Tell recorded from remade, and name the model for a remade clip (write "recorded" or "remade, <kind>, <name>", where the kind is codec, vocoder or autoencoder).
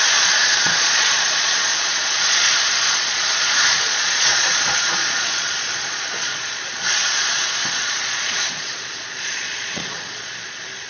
remade, vocoder, Vocos